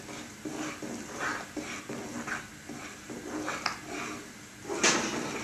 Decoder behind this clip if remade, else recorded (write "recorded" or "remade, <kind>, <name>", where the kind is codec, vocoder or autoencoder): recorded